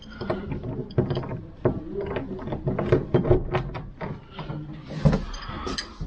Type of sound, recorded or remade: recorded